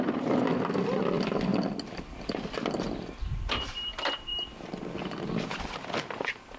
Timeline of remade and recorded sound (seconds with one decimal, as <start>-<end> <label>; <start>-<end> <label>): 0.0-6.6 recorded